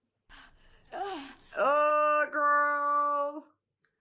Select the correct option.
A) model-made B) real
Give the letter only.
B